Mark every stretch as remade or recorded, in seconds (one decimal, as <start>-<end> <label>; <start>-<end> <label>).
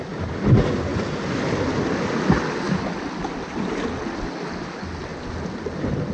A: 0.0-6.1 recorded